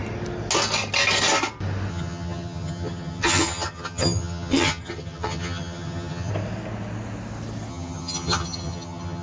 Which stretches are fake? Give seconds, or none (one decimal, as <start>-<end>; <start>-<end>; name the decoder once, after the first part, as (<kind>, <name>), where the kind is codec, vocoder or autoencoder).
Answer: 1.9-6.3 (vocoder, HiFi-GAN); 7.7-9.2